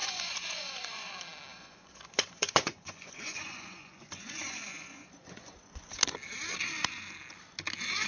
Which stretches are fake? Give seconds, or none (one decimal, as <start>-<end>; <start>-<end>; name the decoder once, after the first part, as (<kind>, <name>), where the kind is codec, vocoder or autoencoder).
0.0-1.1 (vocoder, Vocos); 1.5-5.9